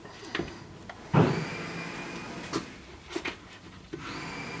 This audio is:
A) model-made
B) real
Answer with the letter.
B